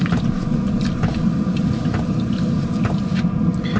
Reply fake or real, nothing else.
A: real